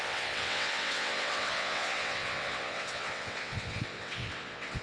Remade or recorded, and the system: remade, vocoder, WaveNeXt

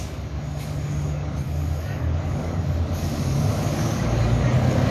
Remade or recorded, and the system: remade, codec, DAC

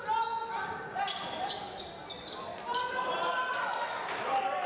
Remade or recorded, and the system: recorded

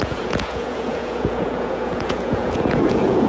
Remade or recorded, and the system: remade, vocoder, Vocos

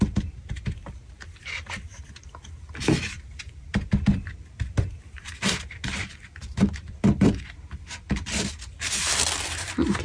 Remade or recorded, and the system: recorded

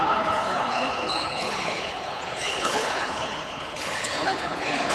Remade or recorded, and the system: remade, codec, HILCodec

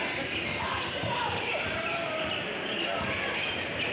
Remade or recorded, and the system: recorded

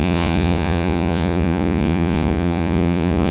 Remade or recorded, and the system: remade, vocoder, Vocos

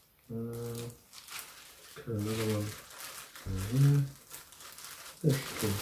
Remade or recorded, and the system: recorded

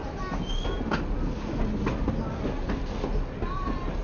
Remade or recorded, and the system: recorded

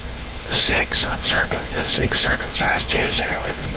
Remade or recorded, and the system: remade, codec, HILCodec